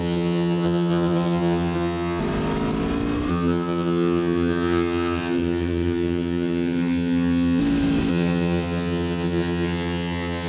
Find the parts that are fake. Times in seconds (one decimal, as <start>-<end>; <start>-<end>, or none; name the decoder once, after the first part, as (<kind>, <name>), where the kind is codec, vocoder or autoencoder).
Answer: 0.0-2.2 (vocoder, HiFi-GAN); 3.3-7.6; 8.1-10.5